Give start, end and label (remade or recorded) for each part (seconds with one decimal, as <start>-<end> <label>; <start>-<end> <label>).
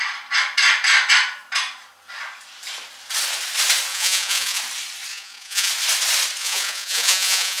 0.0-3.9 recorded; 3.9-4.6 remade; 4.6-5.1 recorded; 5.1-5.7 remade; 5.7-6.4 recorded; 6.4-7.6 remade